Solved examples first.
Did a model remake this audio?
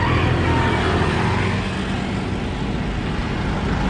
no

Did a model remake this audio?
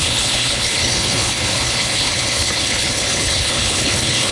yes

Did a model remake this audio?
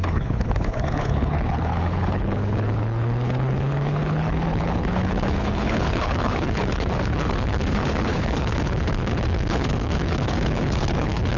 yes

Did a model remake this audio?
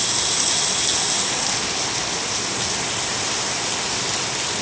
no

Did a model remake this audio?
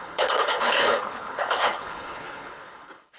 yes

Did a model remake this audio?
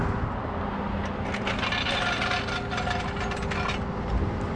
no